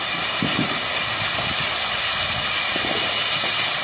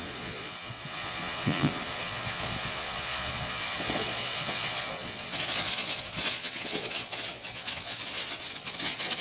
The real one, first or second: first